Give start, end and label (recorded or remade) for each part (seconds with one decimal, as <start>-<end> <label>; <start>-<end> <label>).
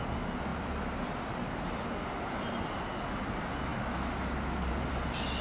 0.0-5.4 recorded